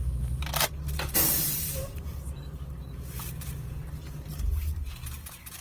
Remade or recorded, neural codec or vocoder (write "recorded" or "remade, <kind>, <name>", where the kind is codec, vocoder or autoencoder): remade, vocoder, BigVGAN v2